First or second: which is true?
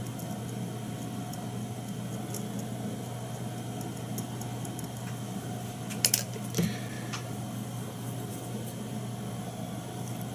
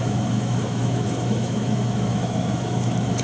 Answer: first